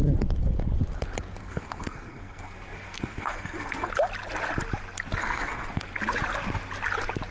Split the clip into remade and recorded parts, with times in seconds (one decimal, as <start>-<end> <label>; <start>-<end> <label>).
0.0-1.4 recorded; 1.4-3.9 remade; 3.9-5.2 recorded; 5.2-5.8 remade; 5.8-7.3 recorded